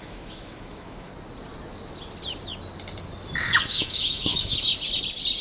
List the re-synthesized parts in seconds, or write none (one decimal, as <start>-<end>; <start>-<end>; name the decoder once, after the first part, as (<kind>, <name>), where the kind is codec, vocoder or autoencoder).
0.0-1.1 (autoencoder, DAC-VAE); 3.6-4.7